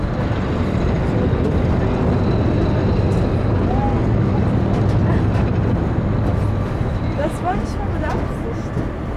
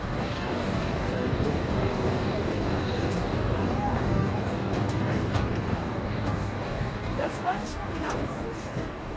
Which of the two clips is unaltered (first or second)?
first